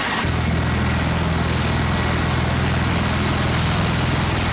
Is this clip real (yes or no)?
yes